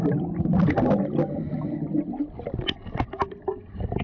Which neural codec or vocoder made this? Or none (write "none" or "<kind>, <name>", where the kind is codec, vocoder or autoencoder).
none